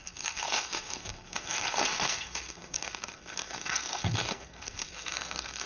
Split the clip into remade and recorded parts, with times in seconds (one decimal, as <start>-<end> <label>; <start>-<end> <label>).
0.0-5.7 remade